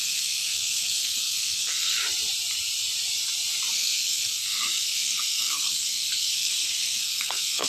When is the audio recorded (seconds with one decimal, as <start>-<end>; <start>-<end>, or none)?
2.0-3.7